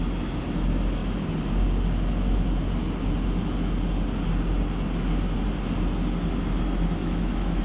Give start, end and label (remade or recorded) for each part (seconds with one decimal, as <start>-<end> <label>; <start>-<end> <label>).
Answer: 0.0-7.0 recorded; 7.0-7.6 remade